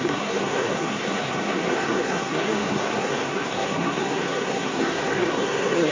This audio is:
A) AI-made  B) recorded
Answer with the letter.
A